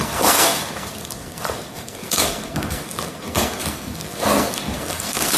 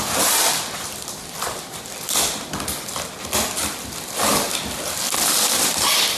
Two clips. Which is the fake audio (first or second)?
first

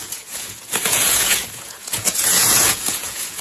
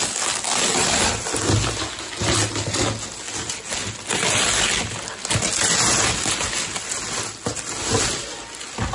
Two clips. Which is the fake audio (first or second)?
first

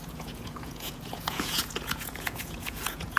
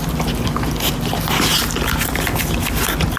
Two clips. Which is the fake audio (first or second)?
first